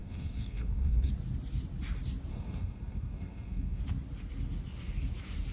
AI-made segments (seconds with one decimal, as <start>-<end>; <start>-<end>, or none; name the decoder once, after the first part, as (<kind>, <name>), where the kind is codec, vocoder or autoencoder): 0.0-1.1 (codec, SNAC); 2.3-3.8